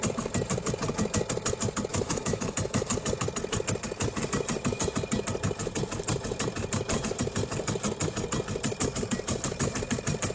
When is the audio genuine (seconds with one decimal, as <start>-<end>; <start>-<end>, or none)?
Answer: 0.0-1.9; 2.9-10.3